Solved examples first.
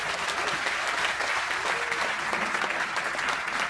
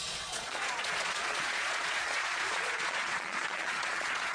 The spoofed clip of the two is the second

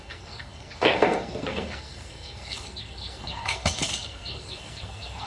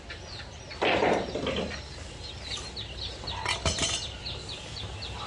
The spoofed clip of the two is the first